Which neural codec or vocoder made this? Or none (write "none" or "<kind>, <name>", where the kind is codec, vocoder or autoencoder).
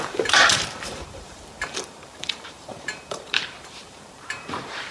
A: vocoder, BigVGAN v2